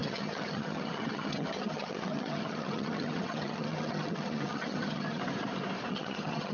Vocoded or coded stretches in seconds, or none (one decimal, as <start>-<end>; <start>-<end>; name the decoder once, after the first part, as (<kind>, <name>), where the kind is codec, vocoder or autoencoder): 0.0-5.2 (vocoder, HiFi-GAN); 5.9-6.5